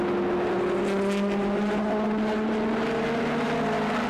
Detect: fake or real real